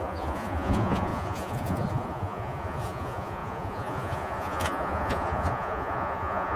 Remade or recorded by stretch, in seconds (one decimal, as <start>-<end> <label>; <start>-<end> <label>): 0.0-6.6 remade